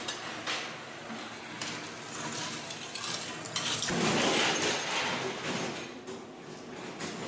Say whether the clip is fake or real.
real